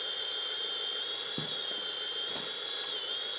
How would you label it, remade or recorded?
recorded